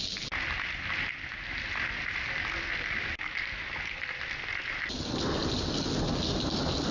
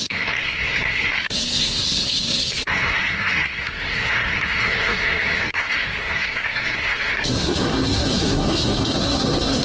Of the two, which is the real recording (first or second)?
first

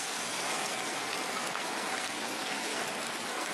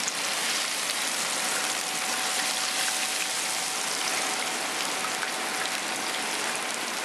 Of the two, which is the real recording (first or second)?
second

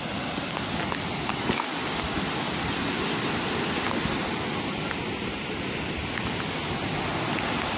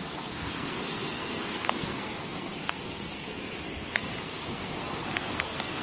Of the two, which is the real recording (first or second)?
first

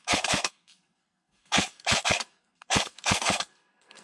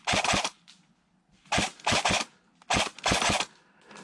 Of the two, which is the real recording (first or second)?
second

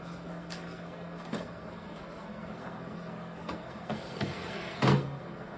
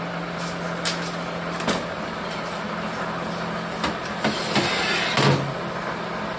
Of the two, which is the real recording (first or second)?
second